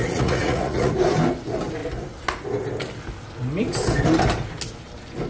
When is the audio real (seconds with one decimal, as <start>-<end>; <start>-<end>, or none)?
0.9-5.3